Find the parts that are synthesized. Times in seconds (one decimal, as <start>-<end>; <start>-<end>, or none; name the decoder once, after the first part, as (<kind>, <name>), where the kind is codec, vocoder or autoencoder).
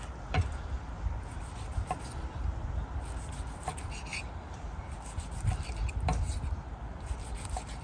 4.1-5.2 (vocoder, BigVGAN v2)